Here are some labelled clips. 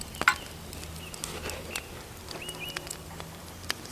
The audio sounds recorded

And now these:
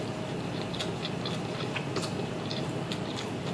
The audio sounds recorded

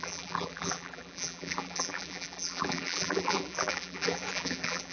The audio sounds remade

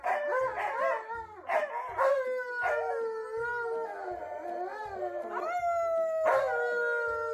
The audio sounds recorded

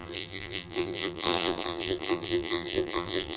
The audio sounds remade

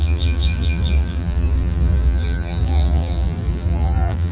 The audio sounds remade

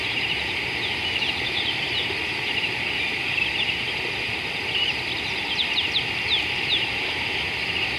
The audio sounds remade